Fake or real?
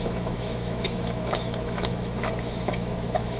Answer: fake